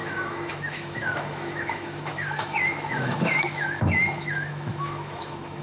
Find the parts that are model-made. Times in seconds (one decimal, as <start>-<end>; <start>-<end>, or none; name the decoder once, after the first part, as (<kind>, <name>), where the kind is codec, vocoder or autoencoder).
0.0-5.6 (autoencoder, DAC-VAE)